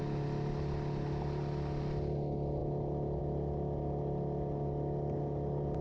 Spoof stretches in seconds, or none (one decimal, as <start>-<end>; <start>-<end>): none